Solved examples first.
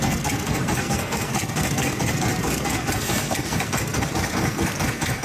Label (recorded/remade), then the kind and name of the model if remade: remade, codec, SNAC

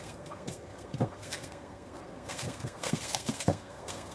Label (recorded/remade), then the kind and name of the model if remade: remade, codec, SNAC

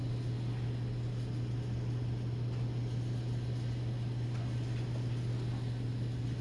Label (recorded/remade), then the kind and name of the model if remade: recorded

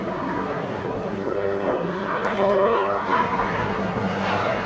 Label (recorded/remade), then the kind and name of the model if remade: remade, codec, SNAC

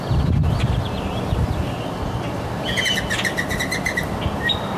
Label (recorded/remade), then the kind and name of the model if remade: recorded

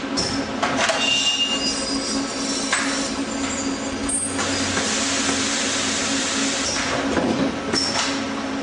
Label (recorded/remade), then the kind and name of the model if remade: recorded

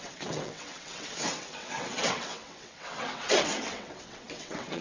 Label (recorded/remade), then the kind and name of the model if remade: remade, vocoder, WaveNeXt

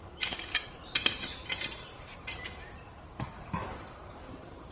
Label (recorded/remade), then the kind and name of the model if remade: remade, vocoder, BigVGAN v2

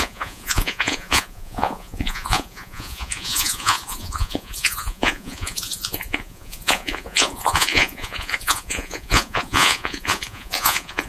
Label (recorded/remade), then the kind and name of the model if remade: remade, vocoder, Vocos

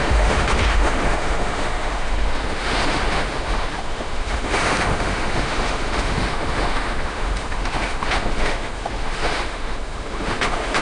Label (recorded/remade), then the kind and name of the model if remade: remade, autoencoder, DAC-VAE